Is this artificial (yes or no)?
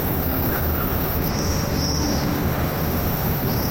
yes